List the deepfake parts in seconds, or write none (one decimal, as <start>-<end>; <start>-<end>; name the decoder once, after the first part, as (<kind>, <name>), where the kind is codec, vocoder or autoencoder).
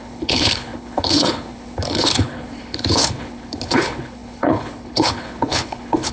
0.0-6.1 (codec, HILCodec)